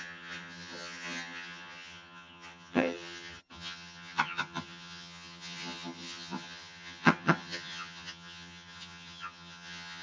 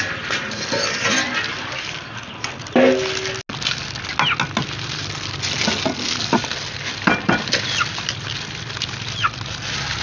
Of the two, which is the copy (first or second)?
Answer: first